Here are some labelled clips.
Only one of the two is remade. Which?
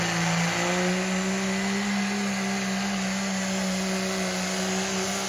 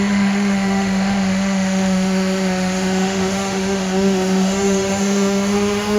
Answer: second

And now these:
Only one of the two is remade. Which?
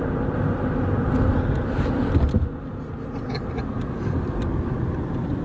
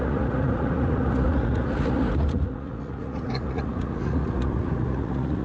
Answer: second